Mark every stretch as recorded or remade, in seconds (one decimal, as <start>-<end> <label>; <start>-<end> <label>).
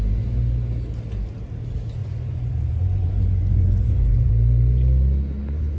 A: 0.0-2.0 recorded; 2.0-4.3 remade; 4.3-5.8 recorded